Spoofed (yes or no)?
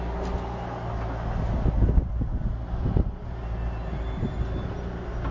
no